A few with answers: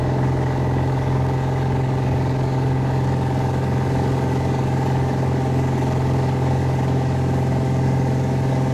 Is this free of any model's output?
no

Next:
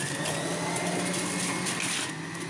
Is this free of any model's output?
yes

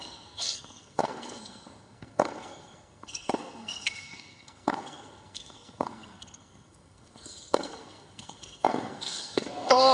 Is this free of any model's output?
no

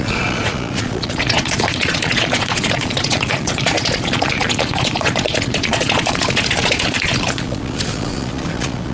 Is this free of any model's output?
no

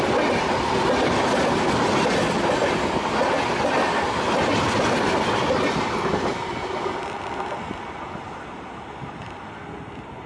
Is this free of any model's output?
yes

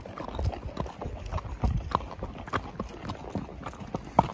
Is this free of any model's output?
yes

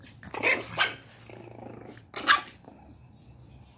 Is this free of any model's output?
yes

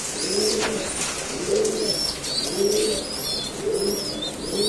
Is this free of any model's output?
yes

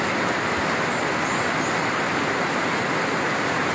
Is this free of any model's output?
yes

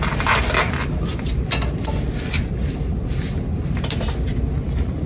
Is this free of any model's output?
yes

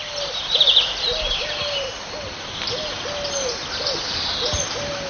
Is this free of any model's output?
yes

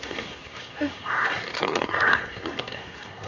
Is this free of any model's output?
no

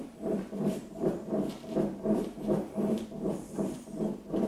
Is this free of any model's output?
no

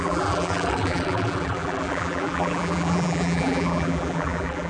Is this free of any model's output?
no